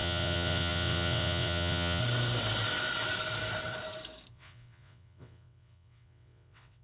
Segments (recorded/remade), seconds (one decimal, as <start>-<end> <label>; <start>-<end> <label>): 0.0-2.0 remade; 2.0-4.3 recorded; 4.3-6.8 remade